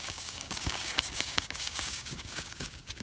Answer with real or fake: fake